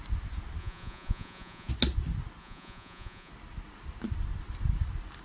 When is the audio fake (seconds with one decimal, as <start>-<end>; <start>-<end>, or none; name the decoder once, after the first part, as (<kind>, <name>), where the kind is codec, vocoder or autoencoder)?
0.6-1.7 (vocoder, Vocos); 2.4-3.3

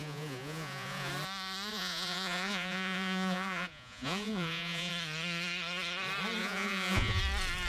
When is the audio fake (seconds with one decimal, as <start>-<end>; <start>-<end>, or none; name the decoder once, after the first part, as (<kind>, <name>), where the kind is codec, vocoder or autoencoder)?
0.0-1.1 (vocoder, Vocos); 1.7-4.9; 6.4-7.2